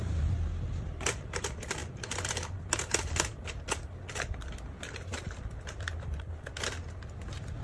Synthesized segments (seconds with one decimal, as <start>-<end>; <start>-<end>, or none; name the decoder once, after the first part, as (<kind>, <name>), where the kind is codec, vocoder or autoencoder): none